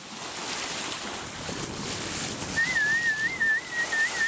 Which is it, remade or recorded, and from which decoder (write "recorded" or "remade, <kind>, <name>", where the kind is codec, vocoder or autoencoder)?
recorded